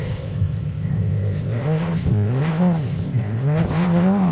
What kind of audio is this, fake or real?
fake